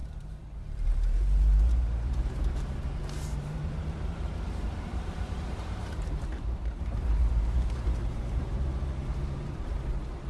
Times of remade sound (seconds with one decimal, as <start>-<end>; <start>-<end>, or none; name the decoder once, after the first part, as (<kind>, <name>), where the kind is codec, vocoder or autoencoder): 0.0-10.3 (vocoder, BigVGAN v2)